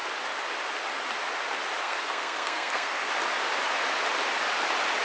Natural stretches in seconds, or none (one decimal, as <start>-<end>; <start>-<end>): 0.0-1.8; 3.1-5.0